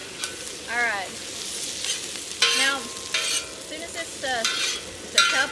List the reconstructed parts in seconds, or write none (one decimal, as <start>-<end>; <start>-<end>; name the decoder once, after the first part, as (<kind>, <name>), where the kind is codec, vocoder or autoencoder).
none